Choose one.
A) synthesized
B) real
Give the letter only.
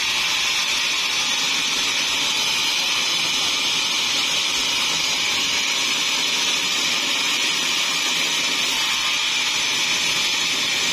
B